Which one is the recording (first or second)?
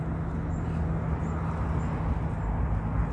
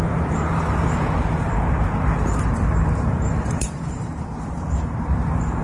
first